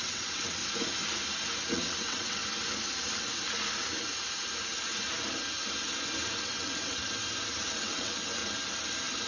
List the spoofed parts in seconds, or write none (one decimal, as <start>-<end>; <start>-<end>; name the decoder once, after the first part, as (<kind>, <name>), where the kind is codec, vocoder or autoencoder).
0.0-0.6 (vocoder, WaveNeXt); 1.7-2.4; 6.4-7.0; 7.7-8.4